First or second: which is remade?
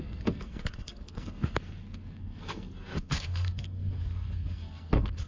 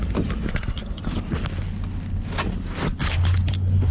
first